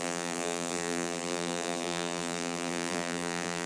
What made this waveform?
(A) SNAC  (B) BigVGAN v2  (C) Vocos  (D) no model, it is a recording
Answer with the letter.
B